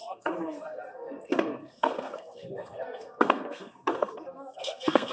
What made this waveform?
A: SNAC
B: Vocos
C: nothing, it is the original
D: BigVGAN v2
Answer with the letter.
A